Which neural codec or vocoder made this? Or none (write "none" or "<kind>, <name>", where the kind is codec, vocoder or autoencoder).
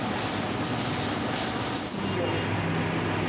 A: none